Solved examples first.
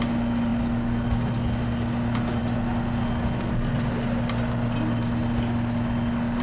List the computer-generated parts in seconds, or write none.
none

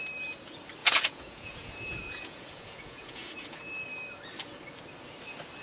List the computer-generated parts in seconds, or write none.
0.8-3.6 (vocoder, Vocos)

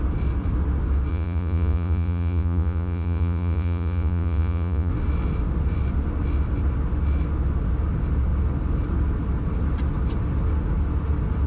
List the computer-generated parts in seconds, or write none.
1.1-4.9 (vocoder, Vocos)

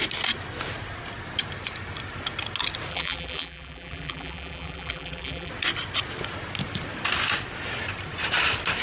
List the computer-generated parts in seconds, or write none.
2.9-5.5 (vocoder, BigVGAN v2)

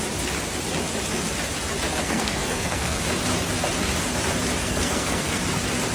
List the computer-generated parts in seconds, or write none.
2.0-3.0 (codec, SNAC); 4.6-5.4